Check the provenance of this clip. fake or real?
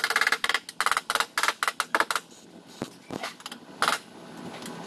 real